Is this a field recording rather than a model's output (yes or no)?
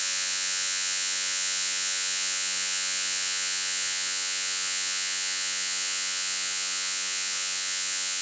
no